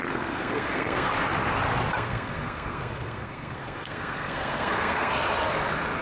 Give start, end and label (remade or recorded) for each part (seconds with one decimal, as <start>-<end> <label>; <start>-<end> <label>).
0.0-1.1 remade; 1.1-1.9 recorded; 1.9-5.1 remade; 5.1-6.0 recorded